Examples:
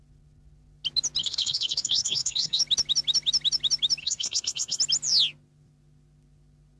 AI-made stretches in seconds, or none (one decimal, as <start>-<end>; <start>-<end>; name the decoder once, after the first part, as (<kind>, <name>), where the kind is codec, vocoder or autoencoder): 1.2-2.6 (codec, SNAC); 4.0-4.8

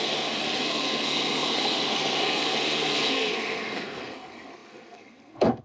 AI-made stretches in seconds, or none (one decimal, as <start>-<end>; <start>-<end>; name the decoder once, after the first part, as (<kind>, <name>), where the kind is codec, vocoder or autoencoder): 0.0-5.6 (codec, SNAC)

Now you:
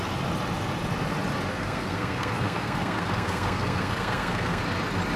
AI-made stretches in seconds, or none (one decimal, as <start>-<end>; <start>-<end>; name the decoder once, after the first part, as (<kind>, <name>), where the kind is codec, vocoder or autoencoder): 1.5-4.6 (codec, SNAC)

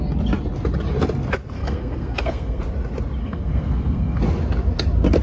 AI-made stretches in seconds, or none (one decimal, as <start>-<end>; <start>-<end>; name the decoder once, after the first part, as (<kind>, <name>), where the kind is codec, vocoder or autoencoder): 1.6-2.6 (codec, SNAC); 3.2-4.2